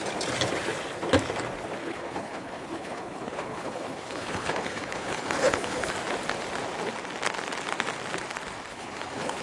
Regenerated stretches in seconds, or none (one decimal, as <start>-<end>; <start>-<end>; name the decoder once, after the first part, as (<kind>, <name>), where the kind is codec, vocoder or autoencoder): 1.8-5.9 (codec, HILCodec); 8.7-9.4